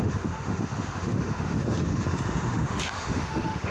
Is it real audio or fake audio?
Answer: fake